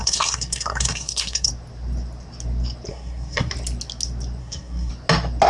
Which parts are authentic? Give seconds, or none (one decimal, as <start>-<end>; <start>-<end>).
1.5-2.9; 3.5-4.4; 4.9-5.5